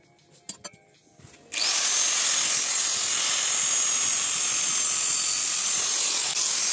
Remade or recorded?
recorded